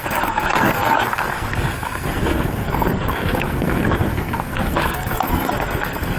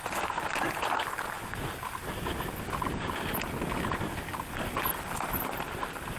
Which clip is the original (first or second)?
second